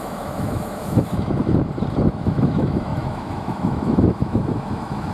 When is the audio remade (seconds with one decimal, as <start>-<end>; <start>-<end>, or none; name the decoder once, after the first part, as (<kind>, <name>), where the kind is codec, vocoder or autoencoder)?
0.0-1.4 (autoencoder, DAC-VAE); 2.1-5.1